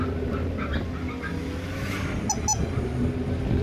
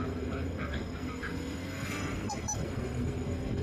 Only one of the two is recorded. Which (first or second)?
first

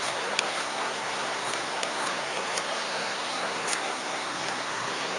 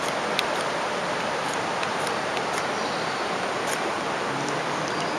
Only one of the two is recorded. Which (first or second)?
second